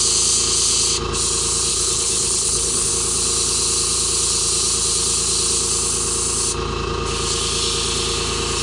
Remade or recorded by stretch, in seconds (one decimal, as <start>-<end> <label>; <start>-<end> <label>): 0.0-1.7 recorded; 1.7-2.9 remade; 2.9-8.6 recorded